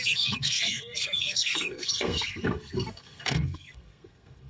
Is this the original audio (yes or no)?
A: no